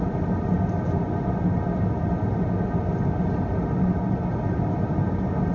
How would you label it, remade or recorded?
recorded